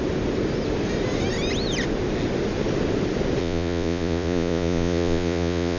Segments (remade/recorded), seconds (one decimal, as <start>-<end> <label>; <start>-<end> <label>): 0.0-3.4 recorded; 3.4-5.8 remade